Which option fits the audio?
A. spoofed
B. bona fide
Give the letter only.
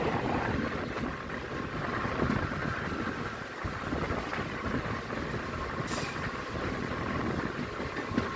B